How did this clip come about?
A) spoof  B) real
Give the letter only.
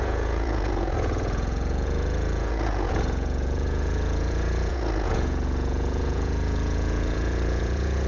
A